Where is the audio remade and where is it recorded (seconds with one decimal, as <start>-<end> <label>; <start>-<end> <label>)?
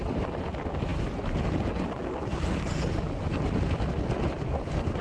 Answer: 0.0-5.0 recorded